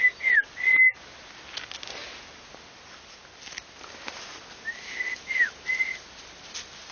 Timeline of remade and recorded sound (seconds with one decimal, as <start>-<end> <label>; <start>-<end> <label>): 0.0-6.9 recorded